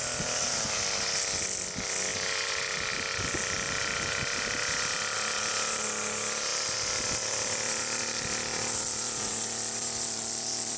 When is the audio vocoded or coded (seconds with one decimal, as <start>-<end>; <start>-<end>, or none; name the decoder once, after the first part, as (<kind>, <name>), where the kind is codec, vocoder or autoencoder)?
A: 6.5-10.8 (vocoder, BigVGAN v2)